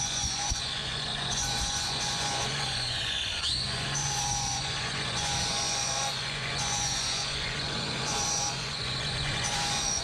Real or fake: fake